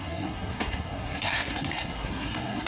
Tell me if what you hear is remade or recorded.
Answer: remade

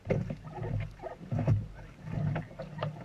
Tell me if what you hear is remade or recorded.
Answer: recorded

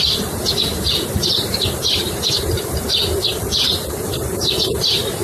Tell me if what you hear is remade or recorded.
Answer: recorded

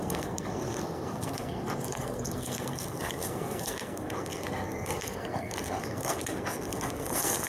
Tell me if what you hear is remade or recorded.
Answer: remade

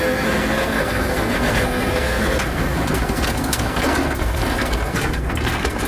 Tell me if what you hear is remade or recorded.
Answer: remade